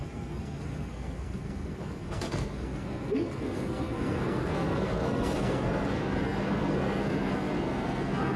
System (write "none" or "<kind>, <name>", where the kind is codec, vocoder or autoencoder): codec, SNAC